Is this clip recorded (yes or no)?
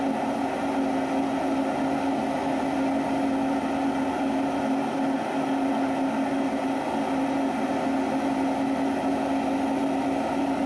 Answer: yes